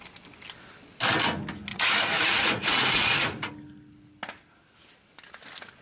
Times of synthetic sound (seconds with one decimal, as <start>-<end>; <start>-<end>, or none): 1.7-3.5